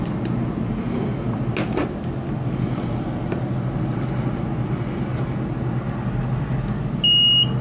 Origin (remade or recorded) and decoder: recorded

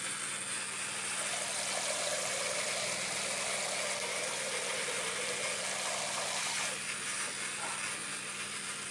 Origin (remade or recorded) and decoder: recorded